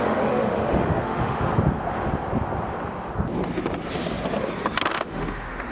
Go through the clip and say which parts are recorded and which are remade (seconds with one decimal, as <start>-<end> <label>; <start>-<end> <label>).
0.0-1.5 remade; 1.5-4.9 recorded; 4.9-5.7 remade